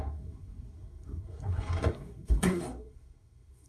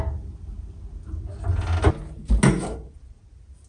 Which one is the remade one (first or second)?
first